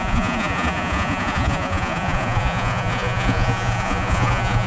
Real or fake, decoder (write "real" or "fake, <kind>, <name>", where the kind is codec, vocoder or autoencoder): fake, vocoder, Vocos